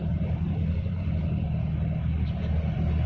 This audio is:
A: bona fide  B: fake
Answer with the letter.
A